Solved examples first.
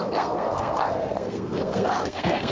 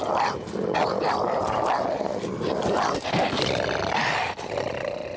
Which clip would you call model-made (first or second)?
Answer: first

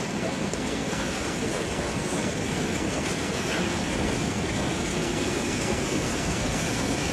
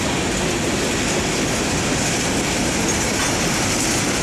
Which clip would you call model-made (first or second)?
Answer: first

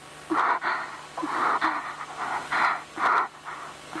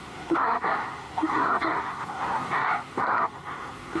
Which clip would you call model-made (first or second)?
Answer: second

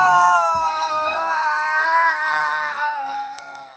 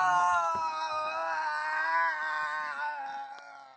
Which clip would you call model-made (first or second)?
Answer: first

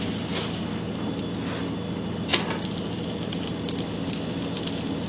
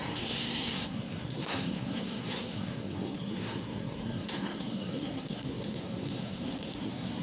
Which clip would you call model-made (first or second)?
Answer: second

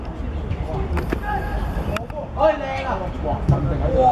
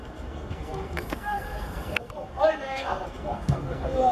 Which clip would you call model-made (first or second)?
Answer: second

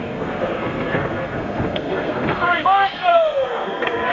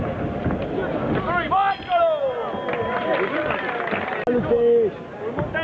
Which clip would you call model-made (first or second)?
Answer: first